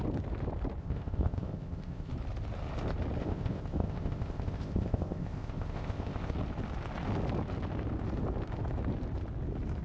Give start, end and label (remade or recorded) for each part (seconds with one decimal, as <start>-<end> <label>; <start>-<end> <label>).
0.0-0.8 recorded; 0.8-2.1 remade; 2.1-3.2 recorded; 3.2-6.3 remade; 6.3-9.8 recorded